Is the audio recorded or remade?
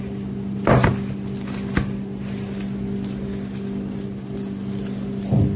recorded